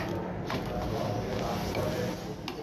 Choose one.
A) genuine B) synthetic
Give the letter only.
A